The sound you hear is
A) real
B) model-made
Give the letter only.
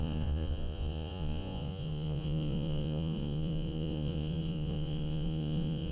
B